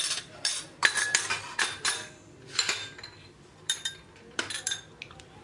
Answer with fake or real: fake